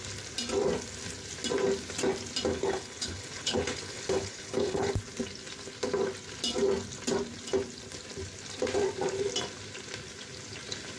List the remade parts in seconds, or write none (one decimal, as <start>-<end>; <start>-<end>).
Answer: 2.5-4.9